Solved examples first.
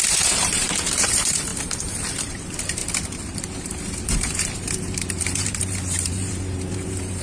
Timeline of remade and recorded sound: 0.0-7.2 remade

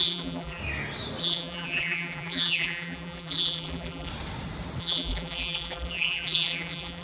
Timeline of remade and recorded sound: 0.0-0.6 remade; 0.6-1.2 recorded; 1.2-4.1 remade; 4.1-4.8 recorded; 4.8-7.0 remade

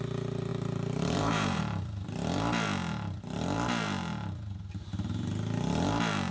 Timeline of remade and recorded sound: 0.0-0.5 recorded; 0.5-1.6 remade; 1.6-6.3 recorded